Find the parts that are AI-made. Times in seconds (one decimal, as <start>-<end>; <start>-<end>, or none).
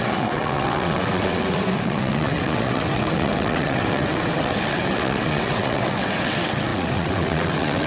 0.0-7.9